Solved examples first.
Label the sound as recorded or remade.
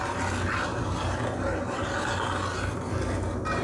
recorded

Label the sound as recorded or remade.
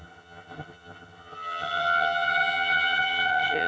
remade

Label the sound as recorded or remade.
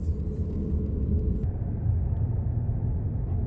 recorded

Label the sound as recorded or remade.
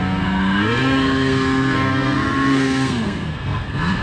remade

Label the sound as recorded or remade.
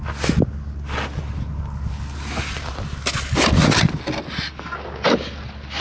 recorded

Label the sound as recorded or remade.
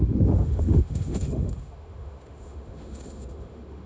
remade